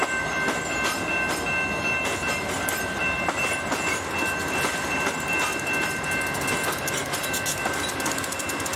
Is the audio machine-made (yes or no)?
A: no